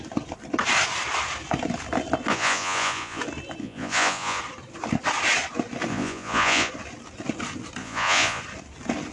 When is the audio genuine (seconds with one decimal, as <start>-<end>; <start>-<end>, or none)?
0.0-2.3; 3.2-3.6; 4.4-5.9; 6.7-7.8; 8.4-9.1